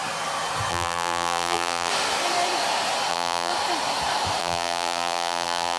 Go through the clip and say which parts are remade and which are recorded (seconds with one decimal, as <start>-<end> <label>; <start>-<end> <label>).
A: 0.0-0.7 recorded; 0.7-1.9 remade; 1.9-3.1 recorded; 3.1-3.5 remade; 3.5-4.4 recorded; 4.4-5.8 remade